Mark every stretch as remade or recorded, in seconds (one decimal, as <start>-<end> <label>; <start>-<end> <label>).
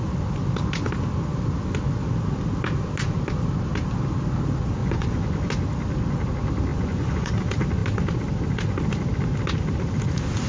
0.0-4.8 recorded; 4.8-5.5 remade; 5.5-6.7 recorded; 6.7-7.3 remade; 7.3-10.5 recorded